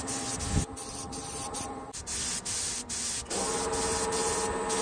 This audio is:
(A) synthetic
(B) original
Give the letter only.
B